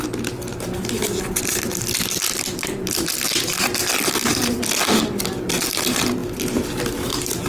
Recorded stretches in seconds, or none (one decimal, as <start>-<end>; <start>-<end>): 0.0-1.0; 3.1-6.2